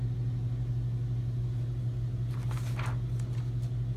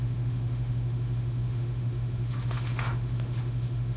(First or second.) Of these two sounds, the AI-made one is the second